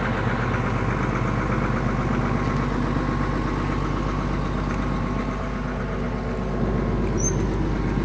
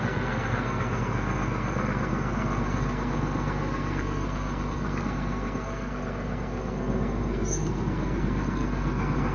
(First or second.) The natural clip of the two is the first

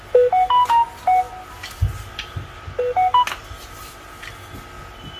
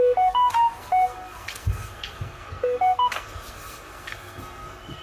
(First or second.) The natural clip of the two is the first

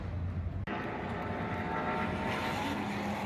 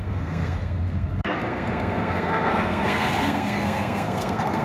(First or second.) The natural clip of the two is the first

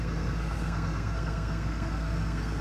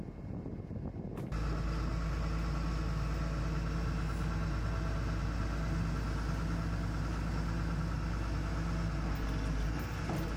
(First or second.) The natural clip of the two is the second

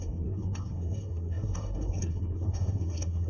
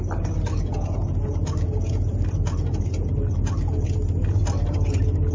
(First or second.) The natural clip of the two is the second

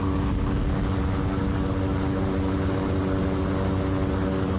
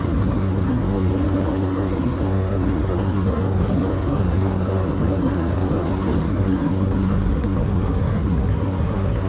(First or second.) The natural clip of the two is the first